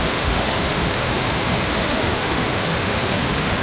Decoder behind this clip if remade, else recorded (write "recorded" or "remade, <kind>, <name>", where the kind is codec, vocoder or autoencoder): remade, autoencoder, DAC-VAE